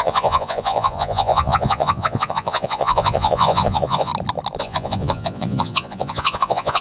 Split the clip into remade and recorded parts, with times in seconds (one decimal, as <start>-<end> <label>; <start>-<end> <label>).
0.0-4.1 remade; 4.1-4.6 recorded; 4.6-6.8 remade